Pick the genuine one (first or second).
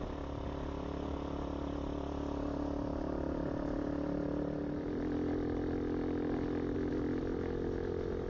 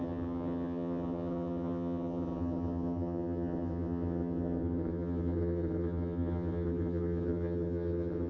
first